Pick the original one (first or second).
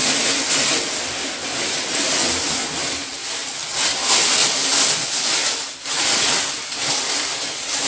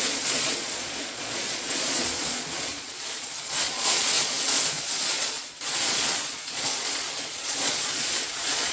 first